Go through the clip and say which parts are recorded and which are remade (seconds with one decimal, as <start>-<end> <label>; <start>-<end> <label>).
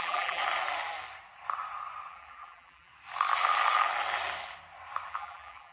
0.0-0.4 remade; 0.4-2.1 recorded; 2.1-2.9 remade; 2.9-5.1 recorded; 5.1-5.7 remade